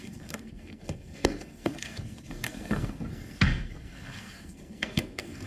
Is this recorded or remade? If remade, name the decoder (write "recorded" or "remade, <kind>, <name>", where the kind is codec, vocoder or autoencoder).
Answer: remade, codec, SNAC